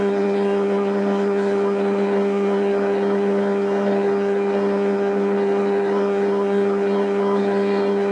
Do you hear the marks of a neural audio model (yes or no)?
yes